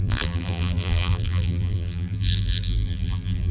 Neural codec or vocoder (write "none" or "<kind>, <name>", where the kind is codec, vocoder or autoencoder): vocoder, BigVGAN v2